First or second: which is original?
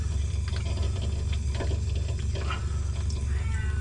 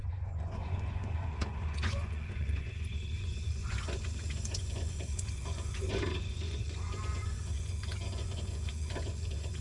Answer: first